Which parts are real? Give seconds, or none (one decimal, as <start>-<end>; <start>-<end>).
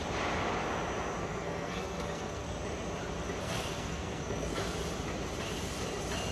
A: 0.0-1.2; 2.4-3.4; 4.6-6.3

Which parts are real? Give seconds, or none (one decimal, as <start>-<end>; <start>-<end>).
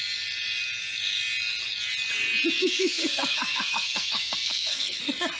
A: 0.0-2.6; 5.0-5.4